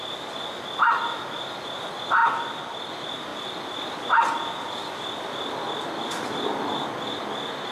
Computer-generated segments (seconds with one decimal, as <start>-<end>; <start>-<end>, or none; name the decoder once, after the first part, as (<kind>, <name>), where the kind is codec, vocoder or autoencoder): none